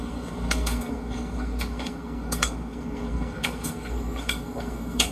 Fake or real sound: fake